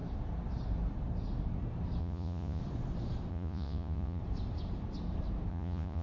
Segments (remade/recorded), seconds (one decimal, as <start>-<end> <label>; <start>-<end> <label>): 0.0-2.0 recorded; 2.0-2.6 remade; 2.6-3.3 recorded; 3.3-4.2 remade; 4.2-5.5 recorded; 5.5-6.0 remade